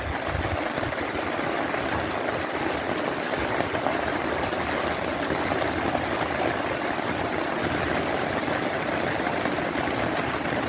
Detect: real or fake real